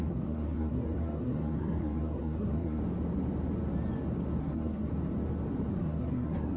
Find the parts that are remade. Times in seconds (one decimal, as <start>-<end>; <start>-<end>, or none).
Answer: 0.0-2.8; 4.4-4.9; 5.7-6.6